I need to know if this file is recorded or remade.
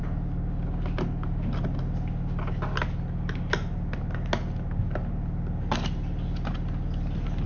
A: recorded